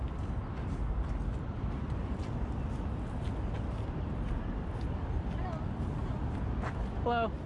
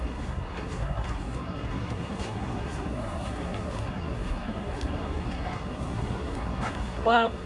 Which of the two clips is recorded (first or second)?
first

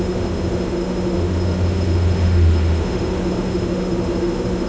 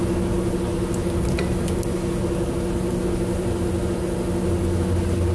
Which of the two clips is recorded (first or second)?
second